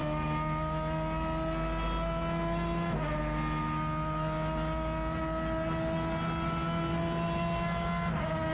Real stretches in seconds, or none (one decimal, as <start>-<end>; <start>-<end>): 0.0-8.5